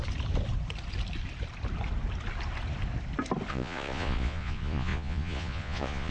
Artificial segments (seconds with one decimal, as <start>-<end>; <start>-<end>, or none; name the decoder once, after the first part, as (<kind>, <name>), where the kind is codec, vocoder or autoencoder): 3.5-6.1 (vocoder, Vocos)